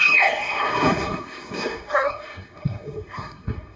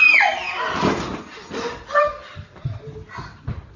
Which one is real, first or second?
second